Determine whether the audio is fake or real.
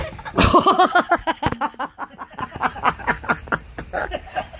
real